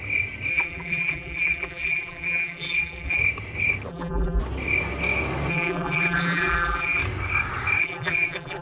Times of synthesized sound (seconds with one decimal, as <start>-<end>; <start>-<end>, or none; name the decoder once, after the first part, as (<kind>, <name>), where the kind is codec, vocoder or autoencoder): 0.5-3.2 (vocoder, BigVGAN v2); 3.9-4.4; 5.5-7.0; 7.8-8.6